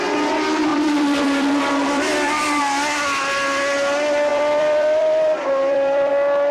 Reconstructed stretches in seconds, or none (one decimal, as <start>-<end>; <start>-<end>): 0.7-2.6; 4.3-6.1